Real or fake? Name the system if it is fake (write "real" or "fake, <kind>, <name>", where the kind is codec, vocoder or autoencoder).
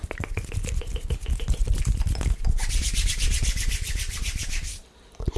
real